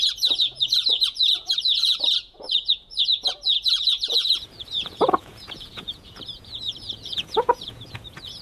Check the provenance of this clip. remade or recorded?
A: remade